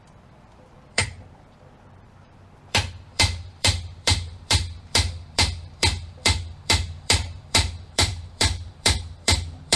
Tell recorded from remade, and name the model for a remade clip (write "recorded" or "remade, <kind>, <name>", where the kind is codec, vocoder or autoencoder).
remade, vocoder, BigVGAN v2